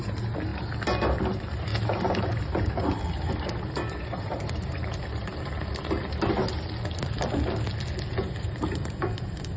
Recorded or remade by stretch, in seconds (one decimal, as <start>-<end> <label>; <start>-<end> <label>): 0.0-0.5 remade; 0.5-1.2 recorded; 1.2-1.7 remade; 1.7-2.2 recorded; 2.2-6.4 remade; 6.4-8.1 recorded; 8.1-9.6 remade